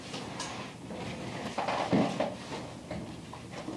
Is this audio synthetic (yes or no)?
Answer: no